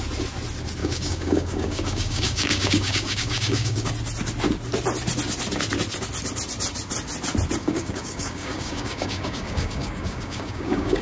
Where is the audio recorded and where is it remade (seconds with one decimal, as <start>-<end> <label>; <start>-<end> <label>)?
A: 0.0-0.8 recorded; 0.8-3.9 remade; 3.9-7.6 recorded; 7.6-11.0 remade